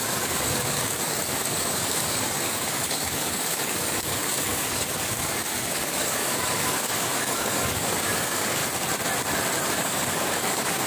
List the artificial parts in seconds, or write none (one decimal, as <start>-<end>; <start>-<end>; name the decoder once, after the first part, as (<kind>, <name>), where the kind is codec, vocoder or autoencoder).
0.0-8.6 (codec, DAC); 9.7-10.9